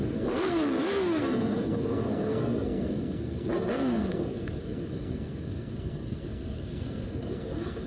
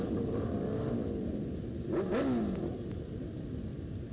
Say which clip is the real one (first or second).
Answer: second